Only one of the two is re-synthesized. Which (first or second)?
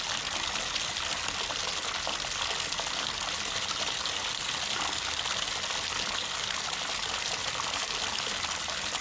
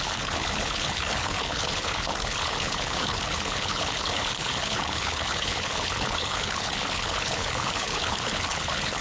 second